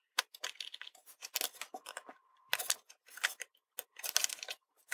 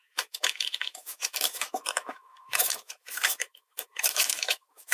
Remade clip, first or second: second